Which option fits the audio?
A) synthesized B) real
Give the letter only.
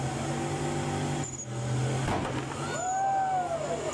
B